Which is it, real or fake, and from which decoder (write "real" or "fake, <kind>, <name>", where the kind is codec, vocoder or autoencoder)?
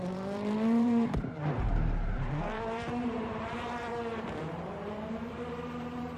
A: fake, vocoder, BigVGAN v2